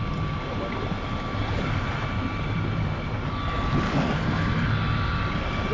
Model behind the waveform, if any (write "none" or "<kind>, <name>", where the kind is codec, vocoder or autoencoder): none